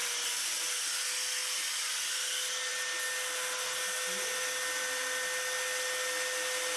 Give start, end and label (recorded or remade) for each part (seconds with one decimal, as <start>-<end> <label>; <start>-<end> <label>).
0.0-6.8 recorded